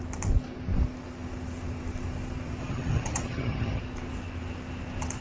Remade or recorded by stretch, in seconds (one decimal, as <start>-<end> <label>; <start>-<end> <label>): 0.0-2.6 recorded; 2.6-3.8 remade; 3.8-5.2 recorded